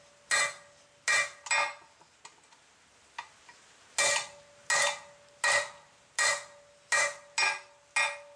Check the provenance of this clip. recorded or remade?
recorded